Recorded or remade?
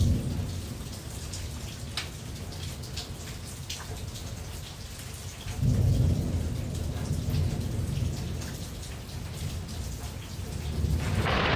recorded